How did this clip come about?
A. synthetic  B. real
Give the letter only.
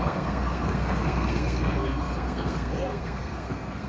A